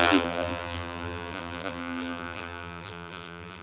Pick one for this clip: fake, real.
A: fake